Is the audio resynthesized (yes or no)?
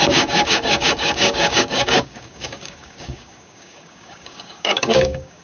yes